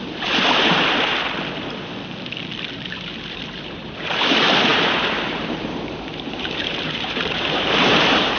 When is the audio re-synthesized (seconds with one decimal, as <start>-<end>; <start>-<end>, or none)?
0.0-1.1; 3.3-8.4

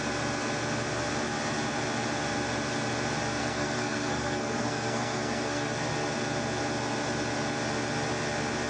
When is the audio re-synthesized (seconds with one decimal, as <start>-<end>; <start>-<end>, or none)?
3.4-5.8